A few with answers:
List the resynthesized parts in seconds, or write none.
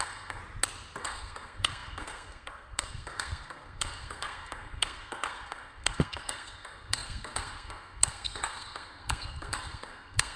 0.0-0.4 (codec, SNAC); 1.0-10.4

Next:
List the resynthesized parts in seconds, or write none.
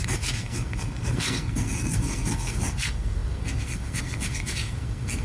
0.0-5.2 (codec, SNAC)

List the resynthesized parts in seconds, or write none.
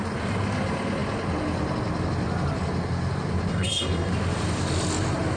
3.5-4.1 (codec, SNAC)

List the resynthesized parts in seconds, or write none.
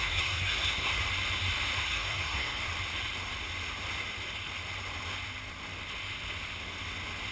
0.0-0.9 (codec, SNAC); 1.8-2.6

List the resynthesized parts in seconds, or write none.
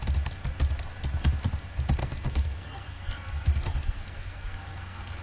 2.0-5.2 (codec, SNAC)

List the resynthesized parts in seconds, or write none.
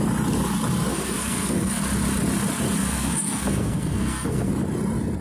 0.9-1.8 (codec, SNAC); 2.8-4.5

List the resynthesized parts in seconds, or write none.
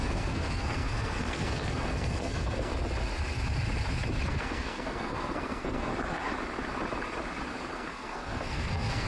0.0-2.7 (codec, SNAC); 4.3-5.9; 7.7-9.1